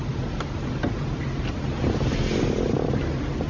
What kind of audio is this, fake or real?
real